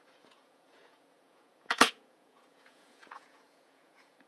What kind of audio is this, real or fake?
fake